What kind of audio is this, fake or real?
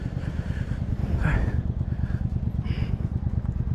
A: real